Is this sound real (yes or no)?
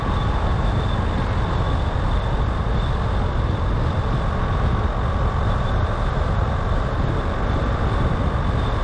yes